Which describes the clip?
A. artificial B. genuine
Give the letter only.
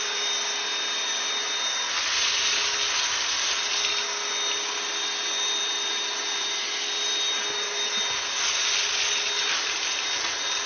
B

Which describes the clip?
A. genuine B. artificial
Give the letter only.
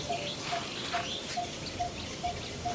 A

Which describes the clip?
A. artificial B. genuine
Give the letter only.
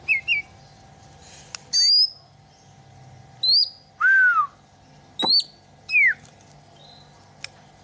B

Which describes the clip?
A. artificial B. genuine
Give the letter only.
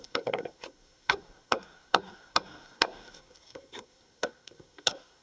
A